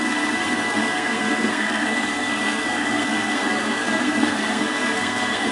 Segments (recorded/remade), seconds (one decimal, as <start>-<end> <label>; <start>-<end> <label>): 0.0-5.5 remade